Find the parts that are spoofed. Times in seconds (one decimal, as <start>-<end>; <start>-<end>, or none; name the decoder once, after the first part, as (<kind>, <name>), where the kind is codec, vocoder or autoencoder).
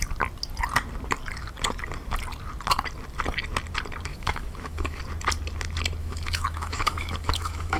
4.1-5.0 (autoencoder, DAC-VAE); 6.0-7.8